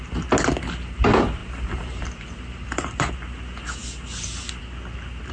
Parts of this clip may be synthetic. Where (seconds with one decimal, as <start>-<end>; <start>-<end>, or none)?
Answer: 1.4-3.1